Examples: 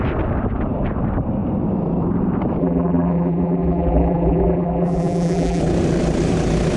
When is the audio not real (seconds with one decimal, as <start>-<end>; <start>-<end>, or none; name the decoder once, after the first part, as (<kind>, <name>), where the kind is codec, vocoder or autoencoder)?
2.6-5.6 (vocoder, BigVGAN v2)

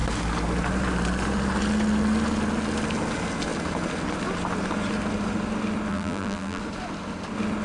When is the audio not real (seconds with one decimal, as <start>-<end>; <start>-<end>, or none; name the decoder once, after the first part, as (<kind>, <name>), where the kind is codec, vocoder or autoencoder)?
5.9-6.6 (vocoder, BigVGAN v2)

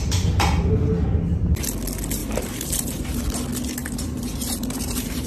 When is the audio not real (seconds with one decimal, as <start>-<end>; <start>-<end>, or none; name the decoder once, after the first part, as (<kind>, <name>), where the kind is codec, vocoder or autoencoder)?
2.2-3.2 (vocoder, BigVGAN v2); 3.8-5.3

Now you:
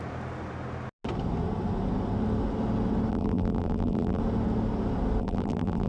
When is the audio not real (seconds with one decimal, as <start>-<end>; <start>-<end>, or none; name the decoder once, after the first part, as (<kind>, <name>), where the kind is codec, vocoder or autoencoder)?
3.1-4.2 (vocoder, BigVGAN v2); 5.2-5.9

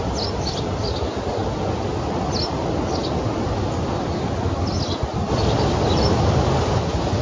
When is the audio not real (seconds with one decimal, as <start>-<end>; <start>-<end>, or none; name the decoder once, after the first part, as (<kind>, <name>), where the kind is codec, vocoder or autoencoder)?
none

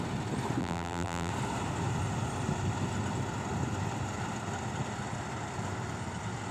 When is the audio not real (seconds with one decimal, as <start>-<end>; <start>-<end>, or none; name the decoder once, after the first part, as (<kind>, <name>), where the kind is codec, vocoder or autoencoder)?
0.6-1.3 (vocoder, BigVGAN v2)

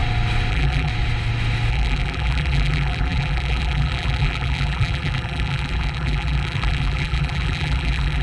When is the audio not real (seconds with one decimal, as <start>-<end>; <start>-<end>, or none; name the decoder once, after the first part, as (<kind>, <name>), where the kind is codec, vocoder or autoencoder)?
0.5-0.9 (vocoder, BigVGAN v2); 1.7-8.2

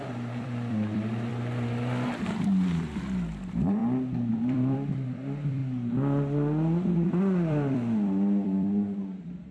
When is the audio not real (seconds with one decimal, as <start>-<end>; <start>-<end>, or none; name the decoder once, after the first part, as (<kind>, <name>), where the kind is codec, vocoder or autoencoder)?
0.0-1.3 (vocoder, BigVGAN v2); 2.2-3.8; 4.3-5.6; 7.2-9.5